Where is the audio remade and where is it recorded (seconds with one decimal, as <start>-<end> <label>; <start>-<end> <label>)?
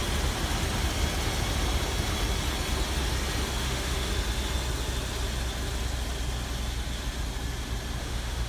0.0-3.6 recorded; 3.6-4.1 remade; 4.1-8.0 recorded; 8.0-8.5 remade